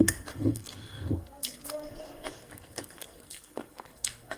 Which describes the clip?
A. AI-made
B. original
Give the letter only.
A